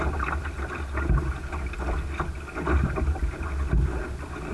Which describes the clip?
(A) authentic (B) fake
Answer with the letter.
A